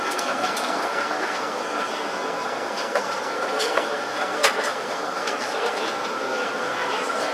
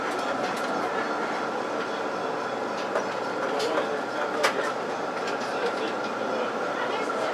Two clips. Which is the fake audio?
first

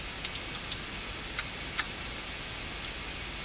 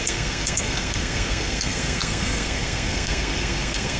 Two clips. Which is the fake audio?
second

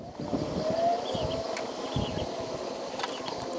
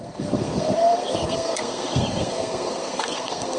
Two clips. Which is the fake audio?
second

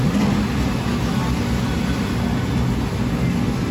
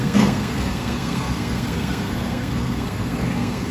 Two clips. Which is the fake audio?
second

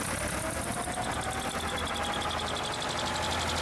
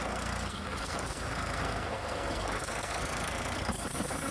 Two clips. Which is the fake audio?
second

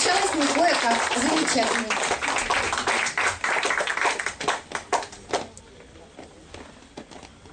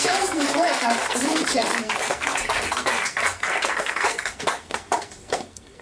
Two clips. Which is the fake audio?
second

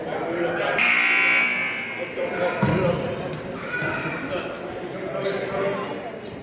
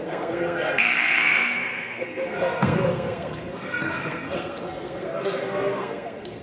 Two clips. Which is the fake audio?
second